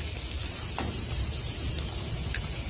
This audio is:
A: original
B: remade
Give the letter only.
A